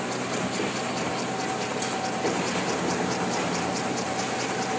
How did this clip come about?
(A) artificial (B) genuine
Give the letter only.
B